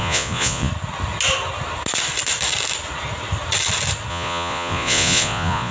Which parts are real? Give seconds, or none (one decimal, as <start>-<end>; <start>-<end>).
0.7-4.1